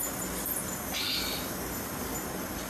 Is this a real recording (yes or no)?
yes